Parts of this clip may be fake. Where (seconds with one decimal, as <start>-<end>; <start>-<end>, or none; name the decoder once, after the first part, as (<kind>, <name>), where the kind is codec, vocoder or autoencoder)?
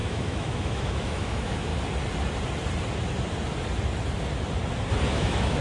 0.0-1.7 (autoencoder, DAC-VAE); 5.1-5.6